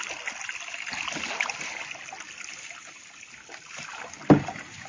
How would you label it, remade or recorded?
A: recorded